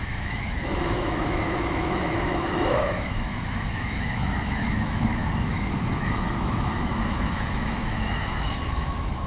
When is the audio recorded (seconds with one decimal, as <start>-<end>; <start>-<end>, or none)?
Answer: none